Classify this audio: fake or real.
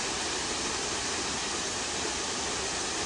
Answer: real